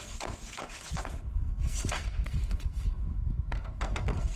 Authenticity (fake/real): fake